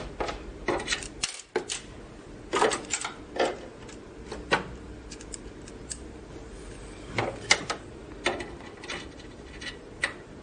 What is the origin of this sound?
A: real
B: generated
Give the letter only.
A